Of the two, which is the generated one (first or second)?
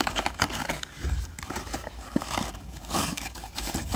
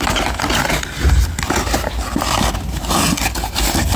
first